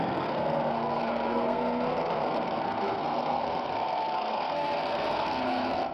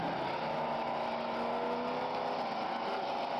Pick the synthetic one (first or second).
first